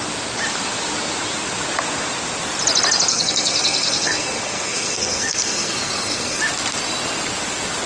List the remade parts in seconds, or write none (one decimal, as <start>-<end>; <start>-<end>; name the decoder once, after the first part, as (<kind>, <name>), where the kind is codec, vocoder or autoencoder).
3.1-6.4 (codec, SNAC)

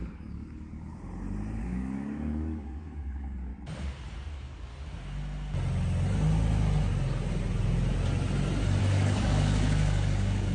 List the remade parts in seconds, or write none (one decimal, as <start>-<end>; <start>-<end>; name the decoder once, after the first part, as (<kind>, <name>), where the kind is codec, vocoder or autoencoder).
0.0-0.9 (codec, DAC); 1.6-3.5; 4.3-4.7; 8.8-10.5

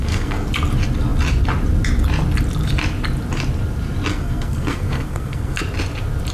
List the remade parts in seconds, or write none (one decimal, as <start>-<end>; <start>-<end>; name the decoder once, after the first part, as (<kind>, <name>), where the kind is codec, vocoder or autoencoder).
0.0-0.5 (codec, SNAC); 4.1-5.6